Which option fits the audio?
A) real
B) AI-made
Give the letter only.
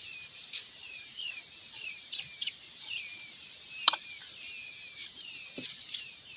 B